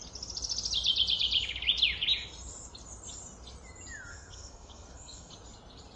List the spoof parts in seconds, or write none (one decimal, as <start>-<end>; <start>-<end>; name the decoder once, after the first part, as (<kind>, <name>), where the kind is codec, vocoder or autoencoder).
4.1-5.3 (codec, SNAC)